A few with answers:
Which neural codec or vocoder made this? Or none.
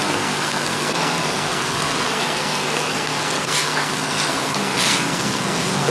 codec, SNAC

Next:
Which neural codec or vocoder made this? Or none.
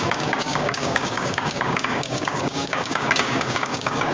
codec, DAC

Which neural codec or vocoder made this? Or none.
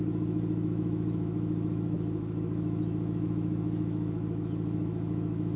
autoencoder, DAC-VAE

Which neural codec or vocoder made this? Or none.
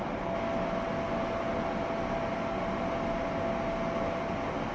none